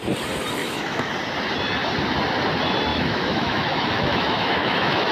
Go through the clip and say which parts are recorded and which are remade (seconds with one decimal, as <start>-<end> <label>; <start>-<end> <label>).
0.0-0.6 recorded; 0.6-1.1 remade; 1.1-2.9 recorded; 2.9-5.1 remade